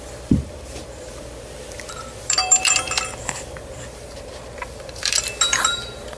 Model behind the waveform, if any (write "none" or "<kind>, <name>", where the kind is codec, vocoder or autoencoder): vocoder, BigVGAN v2